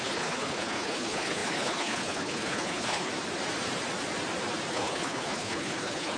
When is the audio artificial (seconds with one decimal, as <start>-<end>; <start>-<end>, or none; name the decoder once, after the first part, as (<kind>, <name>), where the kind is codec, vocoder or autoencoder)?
0.0-3.1 (codec, HILCodec); 4.7-6.2